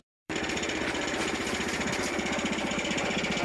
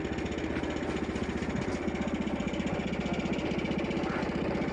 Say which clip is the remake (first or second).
first